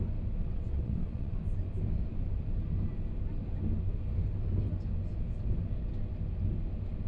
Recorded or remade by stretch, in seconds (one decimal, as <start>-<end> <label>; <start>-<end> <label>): 0.0-0.4 recorded; 0.4-1.4 remade; 1.4-7.1 recorded